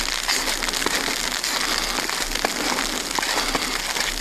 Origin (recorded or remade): recorded